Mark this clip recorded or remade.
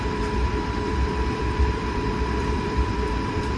remade